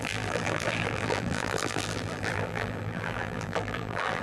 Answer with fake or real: fake